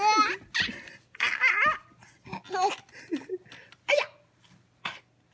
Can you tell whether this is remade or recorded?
recorded